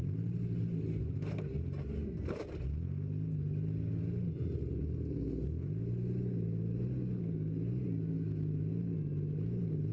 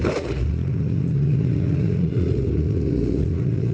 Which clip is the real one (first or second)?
first